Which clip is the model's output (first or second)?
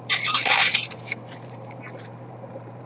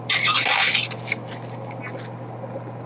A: first